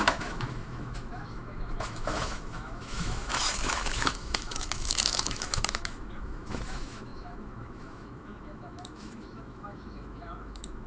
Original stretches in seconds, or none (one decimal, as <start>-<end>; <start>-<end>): none